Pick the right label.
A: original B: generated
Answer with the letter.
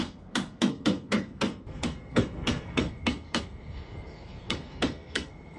B